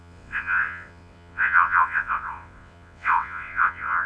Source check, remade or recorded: remade